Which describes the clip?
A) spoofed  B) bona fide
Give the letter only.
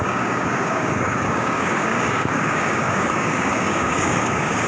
A